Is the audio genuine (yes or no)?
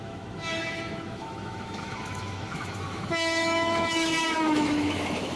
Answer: no